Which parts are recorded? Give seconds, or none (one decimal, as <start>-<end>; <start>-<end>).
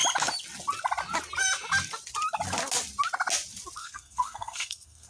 0.0-3.8